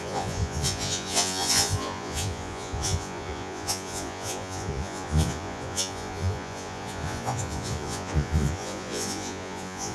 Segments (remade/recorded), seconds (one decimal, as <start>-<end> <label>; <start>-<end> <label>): 0.0-9.9 remade